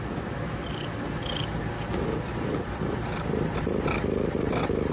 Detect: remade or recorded recorded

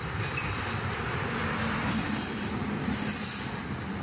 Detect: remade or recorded recorded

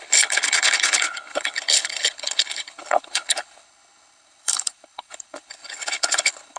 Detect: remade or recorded remade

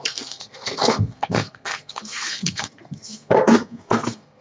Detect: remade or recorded remade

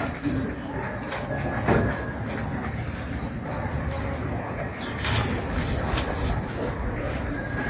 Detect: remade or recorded recorded